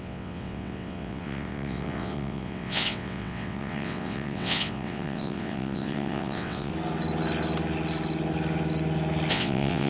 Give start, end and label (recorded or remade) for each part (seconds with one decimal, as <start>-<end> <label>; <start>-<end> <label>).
0.0-6.7 remade; 6.7-9.3 recorded; 9.3-9.9 remade